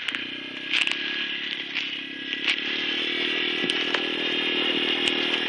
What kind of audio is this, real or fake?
real